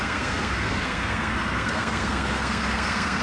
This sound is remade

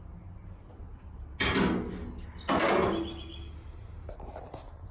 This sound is recorded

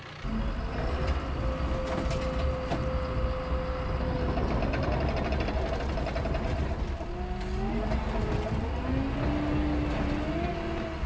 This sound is recorded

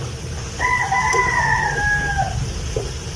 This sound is recorded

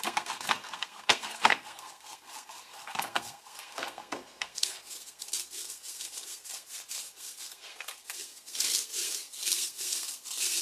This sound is remade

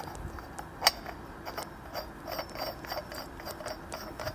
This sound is recorded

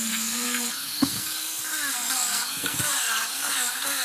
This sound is remade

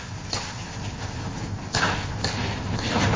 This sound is recorded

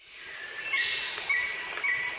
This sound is recorded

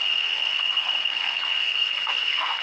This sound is remade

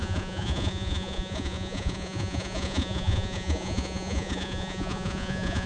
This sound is remade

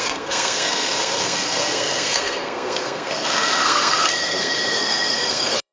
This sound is remade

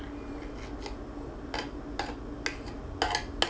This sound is recorded